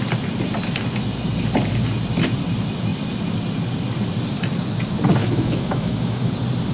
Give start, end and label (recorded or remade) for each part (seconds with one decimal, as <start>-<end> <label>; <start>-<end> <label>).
0.0-5.2 recorded; 5.2-6.3 remade; 6.3-6.7 recorded

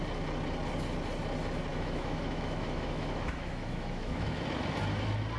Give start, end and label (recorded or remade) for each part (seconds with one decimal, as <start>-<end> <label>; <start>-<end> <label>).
0.0-1.7 recorded; 1.7-4.4 remade; 4.4-5.4 recorded

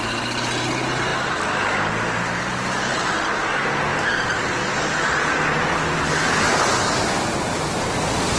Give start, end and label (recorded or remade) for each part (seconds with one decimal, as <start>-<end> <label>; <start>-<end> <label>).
0.0-8.4 recorded

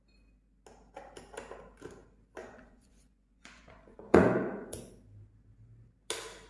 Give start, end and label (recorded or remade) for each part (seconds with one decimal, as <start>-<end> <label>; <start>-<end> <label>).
0.0-2.4 recorded; 2.4-4.9 remade; 4.9-6.5 recorded

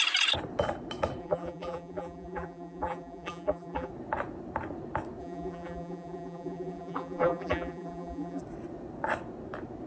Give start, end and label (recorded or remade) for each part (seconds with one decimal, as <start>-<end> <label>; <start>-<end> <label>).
0.0-1.2 recorded; 1.2-3.9 remade; 3.9-5.2 recorded; 5.2-8.4 remade; 8.4-9.9 recorded

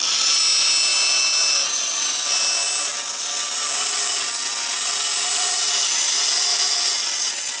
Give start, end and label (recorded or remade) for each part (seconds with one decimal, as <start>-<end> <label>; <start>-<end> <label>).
0.0-7.6 recorded

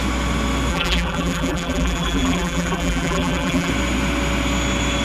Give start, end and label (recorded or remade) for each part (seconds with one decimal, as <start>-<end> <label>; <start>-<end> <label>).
0.0-0.7 recorded; 0.7-3.7 remade; 3.7-5.0 recorded